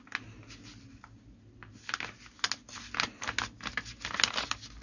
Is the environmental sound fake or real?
real